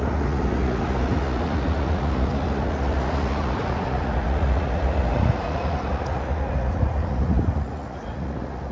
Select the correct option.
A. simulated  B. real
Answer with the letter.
A